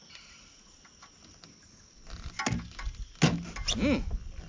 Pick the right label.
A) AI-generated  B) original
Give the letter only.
B